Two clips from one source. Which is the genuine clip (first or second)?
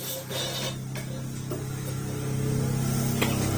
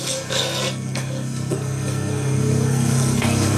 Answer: first